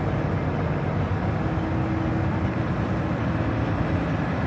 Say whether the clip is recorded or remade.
recorded